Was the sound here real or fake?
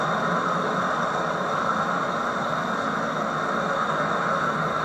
real